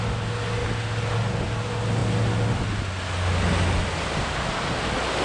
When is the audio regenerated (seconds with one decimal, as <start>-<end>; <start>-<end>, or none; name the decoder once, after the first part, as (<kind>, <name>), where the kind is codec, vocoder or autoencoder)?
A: none